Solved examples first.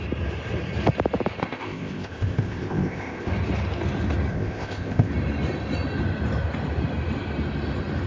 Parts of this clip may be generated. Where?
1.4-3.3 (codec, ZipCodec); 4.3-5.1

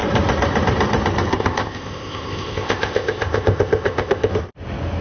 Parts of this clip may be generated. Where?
1.3-4.3 (codec, ZipCodec)

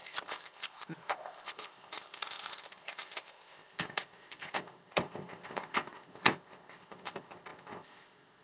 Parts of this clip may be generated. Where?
0.0-8.4 (codec, ZipCodec)

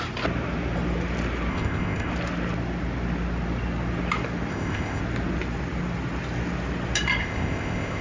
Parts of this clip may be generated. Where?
1.5-2.1 (codec, ZipCodec); 4.5-5.0; 7.2-8.0

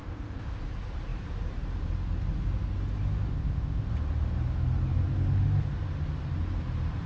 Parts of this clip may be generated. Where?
0.0-0.6 (codec, ZipCodec); 3.3-3.9

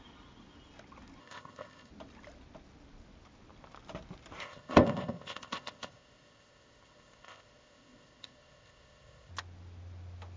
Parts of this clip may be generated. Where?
1.2-1.9 (codec, ZipCodec); 4.4-9.3

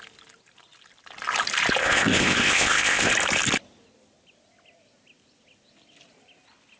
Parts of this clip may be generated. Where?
1.8-3.1 (codec, ZipCodec)